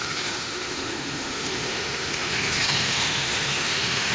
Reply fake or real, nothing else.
fake